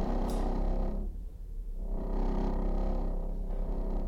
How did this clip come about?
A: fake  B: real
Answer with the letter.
A